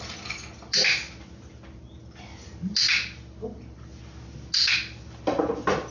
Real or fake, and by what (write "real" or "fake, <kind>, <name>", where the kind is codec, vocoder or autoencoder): real